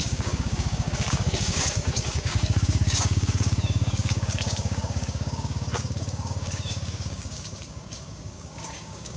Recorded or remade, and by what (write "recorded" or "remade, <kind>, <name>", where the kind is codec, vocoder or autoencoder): remade, codec, DAC